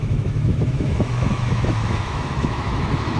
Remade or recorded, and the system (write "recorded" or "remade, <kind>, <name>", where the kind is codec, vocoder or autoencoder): remade, autoencoder, DAC-VAE